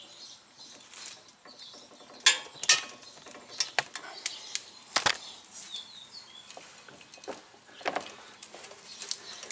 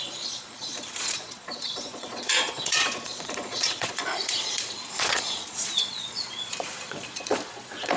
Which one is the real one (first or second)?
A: first